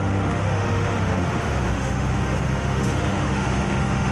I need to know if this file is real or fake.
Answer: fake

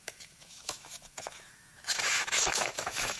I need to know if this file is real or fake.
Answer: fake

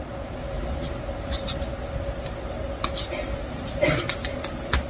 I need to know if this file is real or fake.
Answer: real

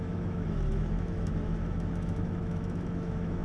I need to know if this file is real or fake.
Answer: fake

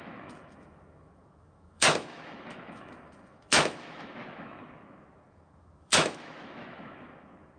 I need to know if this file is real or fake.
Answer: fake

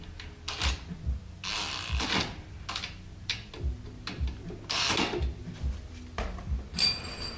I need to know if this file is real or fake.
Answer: real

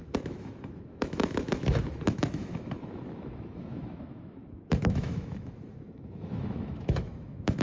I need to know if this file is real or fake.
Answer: fake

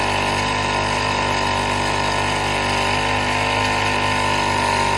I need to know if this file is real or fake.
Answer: real